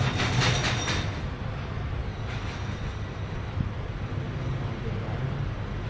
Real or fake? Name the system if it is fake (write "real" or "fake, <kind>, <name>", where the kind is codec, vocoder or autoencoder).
real